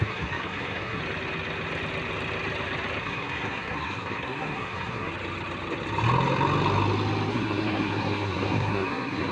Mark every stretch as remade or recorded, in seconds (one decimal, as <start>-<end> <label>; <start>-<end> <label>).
0.0-1.0 remade; 1.0-3.0 recorded; 3.0-5.1 remade; 5.1-7.3 recorded; 7.3-9.3 remade